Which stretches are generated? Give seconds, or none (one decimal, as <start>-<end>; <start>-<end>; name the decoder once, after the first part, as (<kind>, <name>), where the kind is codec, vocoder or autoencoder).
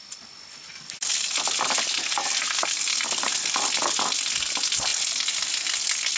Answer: none